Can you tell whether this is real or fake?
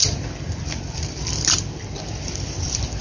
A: fake